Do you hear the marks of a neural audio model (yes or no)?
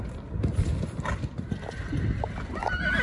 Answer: no